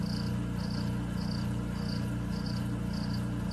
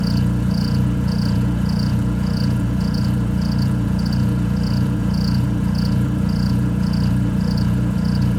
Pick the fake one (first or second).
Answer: second